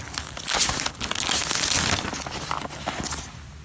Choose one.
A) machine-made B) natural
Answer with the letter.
B